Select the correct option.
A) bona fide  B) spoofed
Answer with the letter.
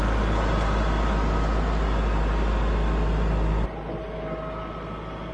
A